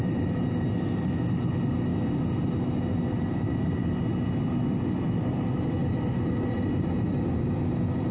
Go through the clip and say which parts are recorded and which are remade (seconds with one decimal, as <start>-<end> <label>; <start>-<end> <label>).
0.0-8.1 recorded